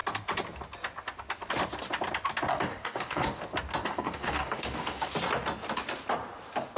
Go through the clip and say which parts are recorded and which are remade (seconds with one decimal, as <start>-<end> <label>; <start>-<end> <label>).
0.0-2.5 recorded; 2.5-3.4 remade; 3.4-3.8 recorded; 3.8-5.1 remade; 5.1-6.8 recorded